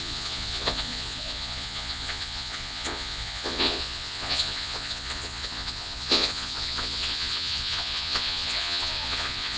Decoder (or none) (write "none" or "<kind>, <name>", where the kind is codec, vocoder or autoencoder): vocoder, Vocos